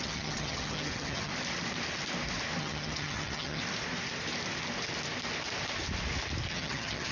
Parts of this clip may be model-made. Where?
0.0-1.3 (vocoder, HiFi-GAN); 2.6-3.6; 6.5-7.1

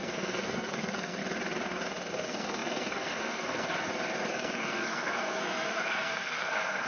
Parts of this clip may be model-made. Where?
0.0-1.2 (codec, SNAC); 2.1-3.7; 4.3-6.9

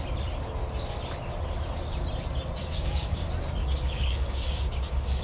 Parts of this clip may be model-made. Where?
2.6-3.2 (codec, DAC); 3.6-5.2

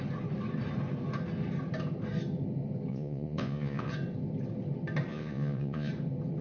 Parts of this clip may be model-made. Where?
2.9-3.9 (vocoder, Vocos); 5.1-5.9